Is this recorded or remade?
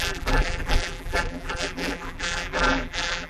remade